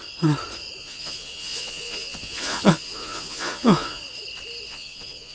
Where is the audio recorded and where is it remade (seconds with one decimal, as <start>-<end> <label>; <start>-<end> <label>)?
0.0-0.8 recorded; 0.8-4.0 remade; 4.0-4.7 recorded; 4.7-5.3 remade